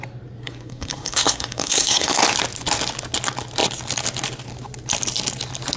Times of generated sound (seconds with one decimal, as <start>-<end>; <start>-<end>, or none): 0.4-2.2

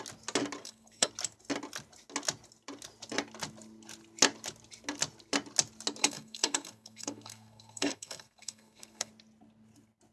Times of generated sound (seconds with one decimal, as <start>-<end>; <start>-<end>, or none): 0.6-1.1; 6.0-9.1

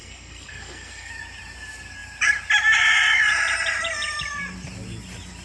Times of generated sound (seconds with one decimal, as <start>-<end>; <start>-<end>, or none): 0.0-1.1